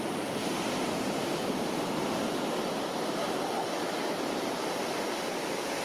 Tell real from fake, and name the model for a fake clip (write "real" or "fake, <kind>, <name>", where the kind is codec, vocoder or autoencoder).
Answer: fake, vocoder, BigVGAN v2